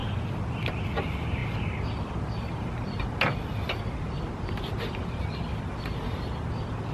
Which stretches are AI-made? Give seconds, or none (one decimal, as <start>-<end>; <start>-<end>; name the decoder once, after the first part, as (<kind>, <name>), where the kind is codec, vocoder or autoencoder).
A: none